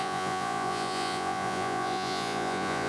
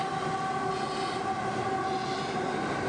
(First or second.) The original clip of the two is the second